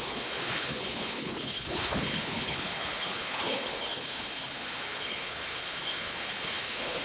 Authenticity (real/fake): fake